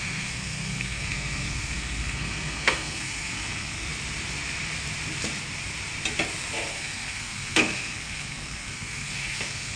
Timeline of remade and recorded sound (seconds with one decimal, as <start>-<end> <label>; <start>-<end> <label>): 0.0-3.9 remade; 3.9-6.7 recorded; 6.7-9.8 remade